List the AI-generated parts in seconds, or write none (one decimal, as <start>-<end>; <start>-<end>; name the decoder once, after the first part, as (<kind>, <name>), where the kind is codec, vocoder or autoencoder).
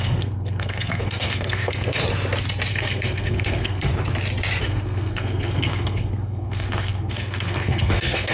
0.0-2.0 (codec, SNAC); 2.7-3.9; 4.6-8.3